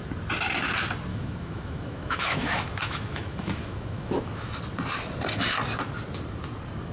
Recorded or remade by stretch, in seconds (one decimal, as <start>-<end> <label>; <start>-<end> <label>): 0.0-1.1 recorded; 1.1-4.5 remade; 4.5-6.9 recorded